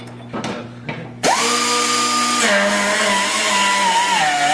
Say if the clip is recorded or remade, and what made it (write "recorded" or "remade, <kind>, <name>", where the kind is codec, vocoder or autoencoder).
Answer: recorded